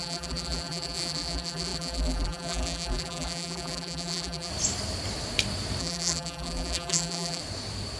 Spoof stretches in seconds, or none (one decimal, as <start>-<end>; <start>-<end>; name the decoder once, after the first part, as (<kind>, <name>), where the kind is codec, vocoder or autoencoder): 0.0-4.5 (vocoder, BigVGAN v2); 5.8-7.4